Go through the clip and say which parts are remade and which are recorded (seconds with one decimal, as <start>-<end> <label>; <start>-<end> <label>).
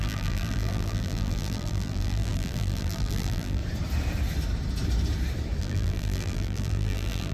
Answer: 0.0-3.6 remade; 3.6-5.6 recorded; 5.6-7.3 remade